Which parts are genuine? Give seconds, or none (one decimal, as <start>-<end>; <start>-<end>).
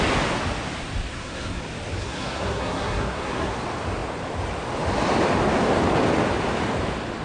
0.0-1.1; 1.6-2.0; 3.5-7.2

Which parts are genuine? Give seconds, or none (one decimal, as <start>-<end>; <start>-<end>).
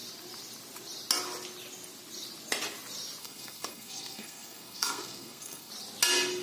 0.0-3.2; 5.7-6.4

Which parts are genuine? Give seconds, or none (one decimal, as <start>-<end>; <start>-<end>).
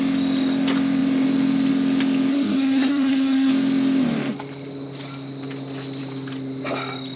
0.0-2.3; 3.5-7.2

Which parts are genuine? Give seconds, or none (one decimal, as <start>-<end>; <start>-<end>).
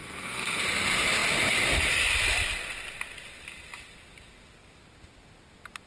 0.6-5.9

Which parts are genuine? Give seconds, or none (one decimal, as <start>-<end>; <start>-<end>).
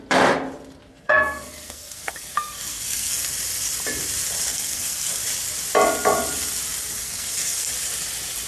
0.0-0.9; 3.2-4.5; 5.2-7.0; 7.7-8.5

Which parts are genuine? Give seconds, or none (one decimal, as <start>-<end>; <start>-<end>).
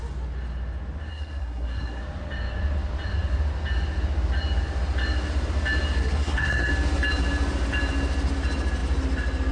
0.0-1.1; 2.0-6.0; 6.7-9.5